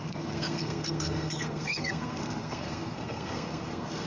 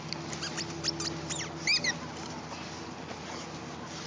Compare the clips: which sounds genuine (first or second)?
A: second